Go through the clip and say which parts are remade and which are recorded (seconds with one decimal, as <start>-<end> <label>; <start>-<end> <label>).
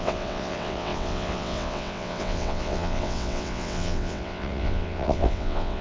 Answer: 0.0-5.8 remade